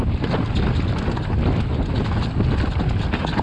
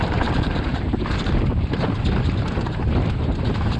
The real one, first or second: first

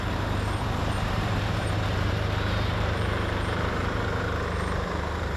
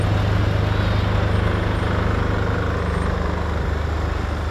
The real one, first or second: second